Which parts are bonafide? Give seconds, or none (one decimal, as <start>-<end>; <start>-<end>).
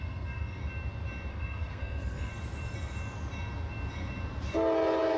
0.6-1.3; 2.3-5.2